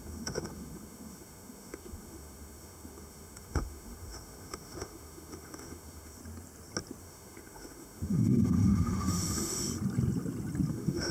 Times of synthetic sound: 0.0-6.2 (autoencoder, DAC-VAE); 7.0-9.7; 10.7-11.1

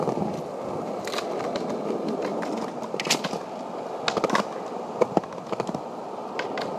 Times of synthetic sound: none

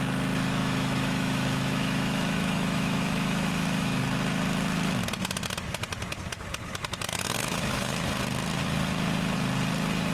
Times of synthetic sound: 0.6-4.0 (autoencoder, DAC-VAE); 7.1-8.1

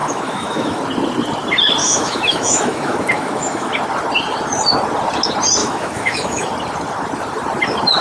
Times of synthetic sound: 0.0-0.8 (autoencoder, DAC-VAE); 1.8-3.7; 5.6-6.5

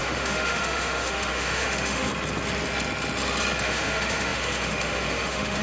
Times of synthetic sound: 0.0-2.1 (autoencoder, DAC-VAE); 3.6-5.6